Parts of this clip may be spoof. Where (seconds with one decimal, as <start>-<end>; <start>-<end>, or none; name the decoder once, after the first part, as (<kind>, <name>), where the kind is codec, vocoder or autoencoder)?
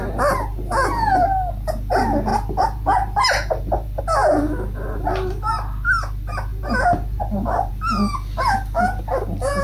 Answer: 2.3-4.0 (vocoder, BigVGAN v2); 6.5-7.7